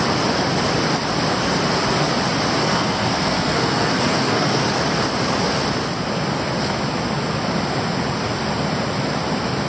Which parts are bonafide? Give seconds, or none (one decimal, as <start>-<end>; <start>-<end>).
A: 0.0-2.6; 4.6-9.7